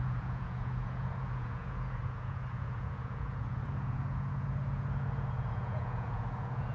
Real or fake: fake